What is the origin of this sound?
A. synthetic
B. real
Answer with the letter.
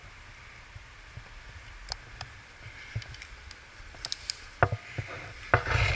B